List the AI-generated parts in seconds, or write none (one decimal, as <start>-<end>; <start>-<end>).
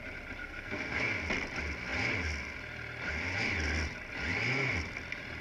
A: 0.4-1.0